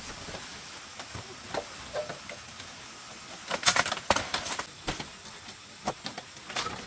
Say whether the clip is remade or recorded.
recorded